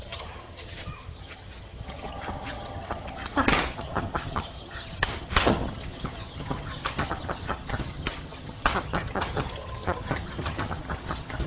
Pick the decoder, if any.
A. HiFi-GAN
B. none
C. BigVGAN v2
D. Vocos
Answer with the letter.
A